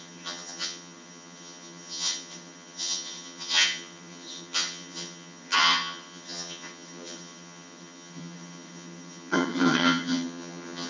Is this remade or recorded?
remade